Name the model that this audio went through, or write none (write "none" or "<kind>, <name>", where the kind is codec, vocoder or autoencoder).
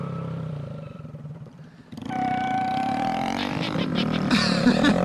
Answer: vocoder, BigVGAN v2